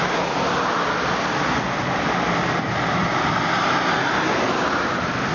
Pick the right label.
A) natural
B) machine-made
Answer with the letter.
A